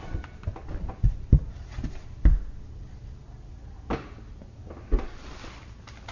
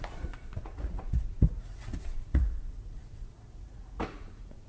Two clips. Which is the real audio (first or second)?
first